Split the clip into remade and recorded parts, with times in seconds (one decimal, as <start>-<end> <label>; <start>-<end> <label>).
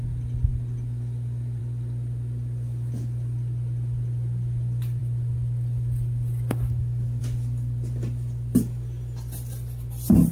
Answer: 0.0-10.3 recorded